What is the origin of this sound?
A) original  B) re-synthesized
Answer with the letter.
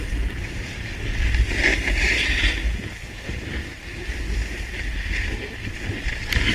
A